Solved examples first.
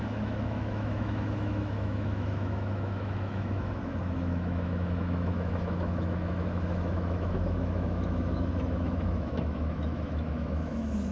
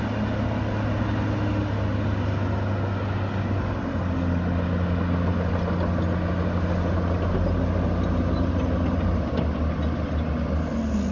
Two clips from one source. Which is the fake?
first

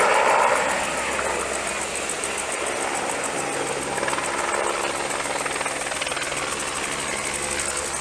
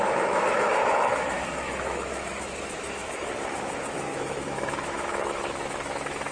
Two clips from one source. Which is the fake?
second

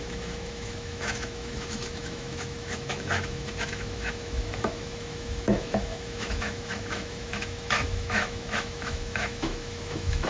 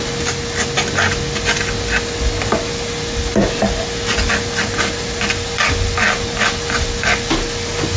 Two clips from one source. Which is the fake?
first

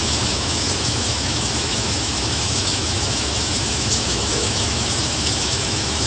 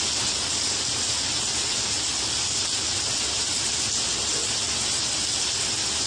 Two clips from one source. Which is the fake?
first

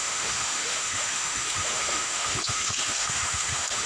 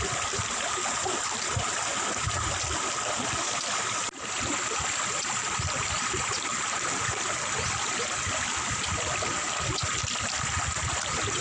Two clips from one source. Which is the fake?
first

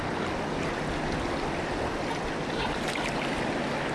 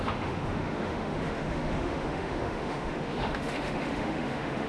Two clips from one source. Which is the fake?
second